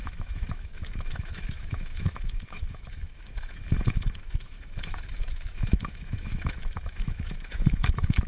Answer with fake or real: fake